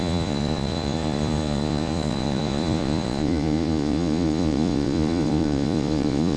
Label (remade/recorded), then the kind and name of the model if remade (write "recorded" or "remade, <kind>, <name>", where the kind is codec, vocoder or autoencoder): remade, vocoder, Vocos